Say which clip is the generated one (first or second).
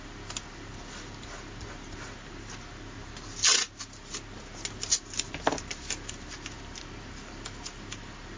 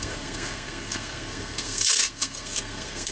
second